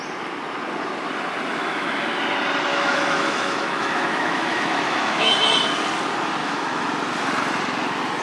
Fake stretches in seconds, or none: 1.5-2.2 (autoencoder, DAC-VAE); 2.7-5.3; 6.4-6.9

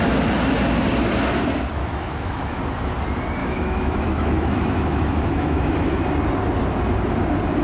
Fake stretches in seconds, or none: 1.8-2.6 (autoencoder, DAC-VAE); 3.4-5.9

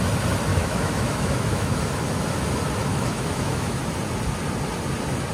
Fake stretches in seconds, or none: 0.5-1.8 (autoencoder, DAC-VAE); 2.9-3.8

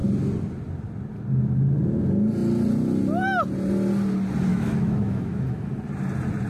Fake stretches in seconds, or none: 4.5-5.7 (autoencoder, DAC-VAE)